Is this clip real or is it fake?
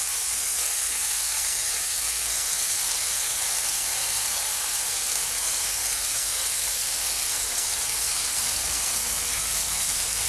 fake